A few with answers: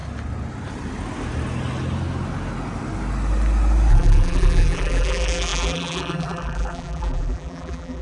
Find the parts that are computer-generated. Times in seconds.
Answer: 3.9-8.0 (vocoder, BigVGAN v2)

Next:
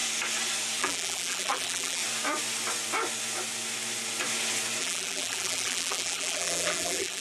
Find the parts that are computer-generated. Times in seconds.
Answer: 0.8-2.0 (vocoder, BigVGAN v2); 4.8-7.2

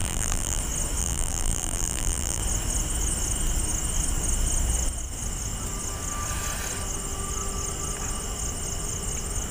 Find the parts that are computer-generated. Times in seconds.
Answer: 0.0-0.6 (vocoder, BigVGAN v2); 1.0-2.4

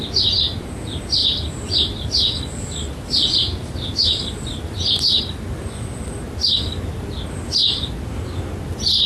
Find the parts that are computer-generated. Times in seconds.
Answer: 1.2-5.2 (vocoder, BigVGAN v2)